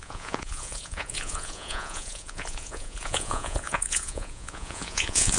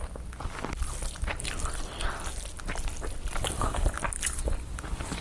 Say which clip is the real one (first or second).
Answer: second